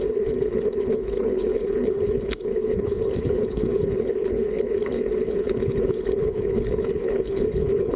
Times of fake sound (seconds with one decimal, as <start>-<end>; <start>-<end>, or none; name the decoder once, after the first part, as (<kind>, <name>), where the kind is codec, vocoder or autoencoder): 0.0-8.0 (codec, HILCodec)